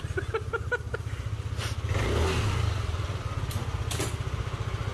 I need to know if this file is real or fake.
real